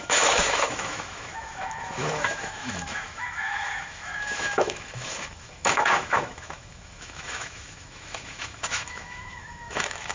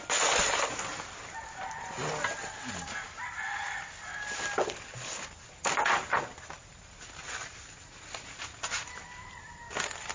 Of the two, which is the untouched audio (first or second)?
second